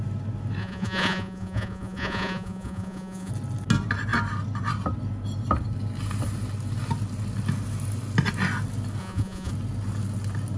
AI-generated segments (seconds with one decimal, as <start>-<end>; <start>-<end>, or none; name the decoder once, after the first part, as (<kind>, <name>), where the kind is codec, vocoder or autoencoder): 0.6-3.3 (vocoder, Vocos); 9.0-9.5